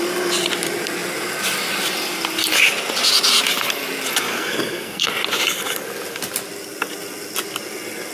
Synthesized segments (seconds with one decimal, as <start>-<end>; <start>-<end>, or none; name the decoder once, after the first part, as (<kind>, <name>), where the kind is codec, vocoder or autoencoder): 4.3-5.1 (codec, SNAC)